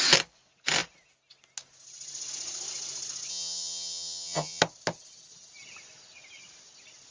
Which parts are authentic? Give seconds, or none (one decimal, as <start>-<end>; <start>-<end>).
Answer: 0.0-3.3; 4.6-7.1